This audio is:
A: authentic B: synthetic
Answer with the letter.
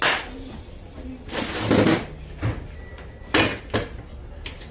A